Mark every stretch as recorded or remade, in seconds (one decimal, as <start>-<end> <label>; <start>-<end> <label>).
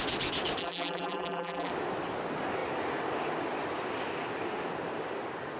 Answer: 0.0-0.6 recorded; 0.6-1.7 remade; 1.7-5.6 recorded